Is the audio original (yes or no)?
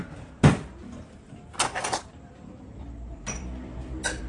yes